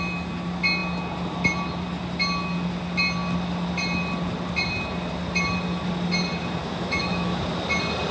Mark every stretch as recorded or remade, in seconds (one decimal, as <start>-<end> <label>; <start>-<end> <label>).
0.0-6.6 recorded; 6.6-7.4 remade; 7.4-8.1 recorded